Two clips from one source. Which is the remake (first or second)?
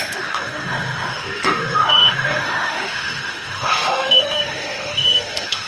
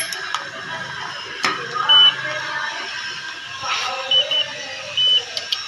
first